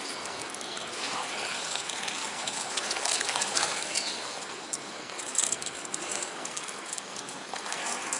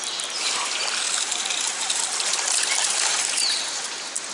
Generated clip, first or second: first